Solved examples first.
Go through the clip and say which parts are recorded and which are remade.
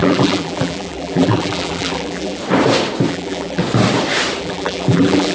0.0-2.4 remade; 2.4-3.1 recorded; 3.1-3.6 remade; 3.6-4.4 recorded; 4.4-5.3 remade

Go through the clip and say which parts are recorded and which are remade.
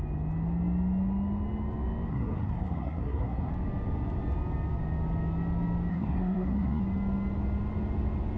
0.0-2.1 recorded; 2.1-3.5 remade; 3.5-5.9 recorded; 5.9-6.8 remade; 6.8-8.4 recorded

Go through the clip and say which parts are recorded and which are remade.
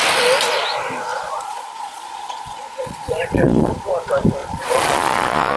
0.0-1.1 recorded; 1.1-3.7 remade; 3.7-4.4 recorded; 4.4-5.6 remade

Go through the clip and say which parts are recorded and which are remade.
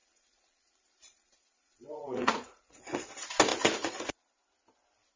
0.0-3.1 remade; 3.1-3.5 recorded; 3.5-4.3 remade; 4.3-5.2 recorded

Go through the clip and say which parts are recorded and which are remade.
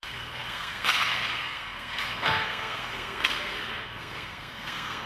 0.0-5.1 remade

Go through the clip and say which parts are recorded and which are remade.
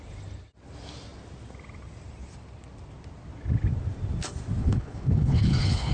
0.0-4.6 recorded; 4.6-5.9 remade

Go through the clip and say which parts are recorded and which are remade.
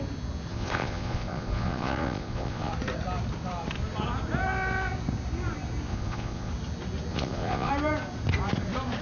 0.0-0.5 recorded; 0.5-2.7 remade; 2.7-5.9 recorded; 5.9-6.5 remade; 6.5-7.1 recorded; 7.1-7.7 remade; 7.7-9.0 recorded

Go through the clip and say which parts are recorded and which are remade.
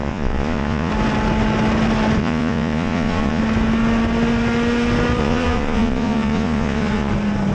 0.0-0.9 remade; 0.9-2.2 recorded; 2.2-3.4 remade; 3.4-5.2 recorded; 5.2-7.1 remade; 7.1-7.5 recorded